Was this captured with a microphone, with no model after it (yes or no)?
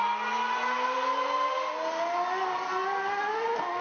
yes